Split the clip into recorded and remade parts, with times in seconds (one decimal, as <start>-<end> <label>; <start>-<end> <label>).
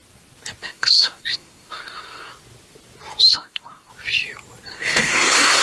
0.0-0.6 recorded; 0.6-2.3 remade; 2.3-3.3 recorded; 3.3-3.9 remade; 3.9-4.7 recorded; 4.7-5.6 remade